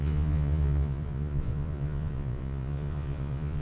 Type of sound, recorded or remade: remade